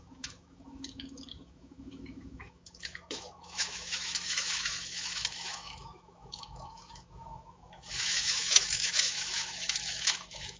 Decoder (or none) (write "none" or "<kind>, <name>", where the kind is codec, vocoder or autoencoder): autoencoder, DAC-VAE